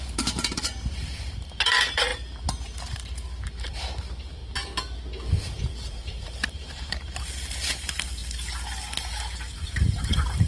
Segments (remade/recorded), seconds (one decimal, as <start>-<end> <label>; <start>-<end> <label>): 0.0-4.4 remade; 4.4-5.4 recorded; 5.4-8.2 remade; 8.2-9.9 recorded; 9.9-10.5 remade